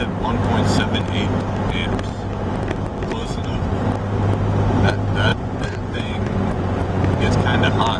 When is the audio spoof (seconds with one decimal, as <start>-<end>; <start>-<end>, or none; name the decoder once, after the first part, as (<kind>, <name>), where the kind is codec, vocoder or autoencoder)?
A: 3.2-3.8 (vocoder, Vocos); 5.3-7.3